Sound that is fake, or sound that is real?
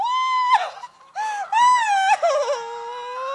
real